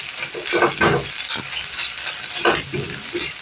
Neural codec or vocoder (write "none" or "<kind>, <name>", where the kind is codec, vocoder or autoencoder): none